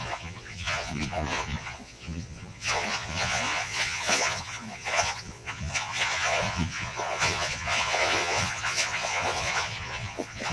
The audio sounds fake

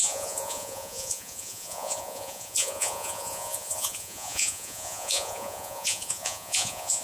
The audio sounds fake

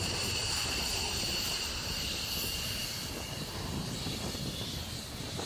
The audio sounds real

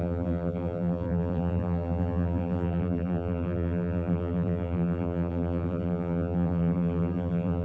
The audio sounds fake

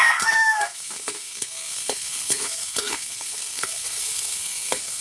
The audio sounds fake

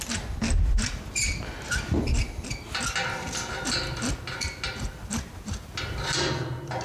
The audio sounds real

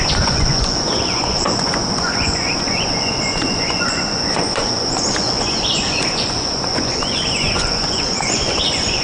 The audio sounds fake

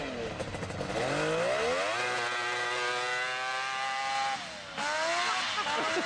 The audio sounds real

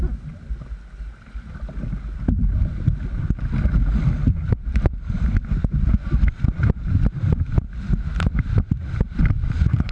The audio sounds real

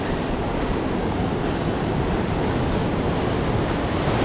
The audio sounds real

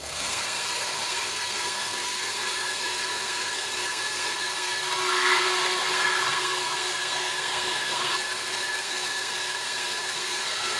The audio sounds fake